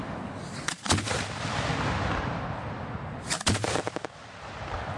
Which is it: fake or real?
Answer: real